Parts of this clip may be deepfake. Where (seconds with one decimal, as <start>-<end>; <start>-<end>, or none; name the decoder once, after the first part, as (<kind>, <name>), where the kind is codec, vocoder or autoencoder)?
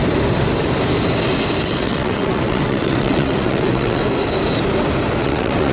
1.6-4.0 (vocoder, WaveNeXt); 5.2-5.7